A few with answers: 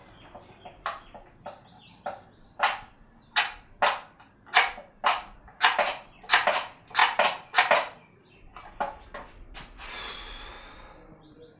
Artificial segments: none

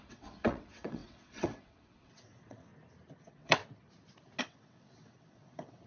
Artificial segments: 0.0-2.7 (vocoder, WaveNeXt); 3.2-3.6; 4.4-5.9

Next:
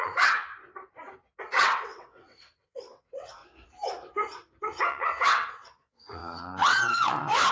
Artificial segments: 0.0-0.5 (vocoder, WaveNeXt); 1.4-3.4; 4.6-7.5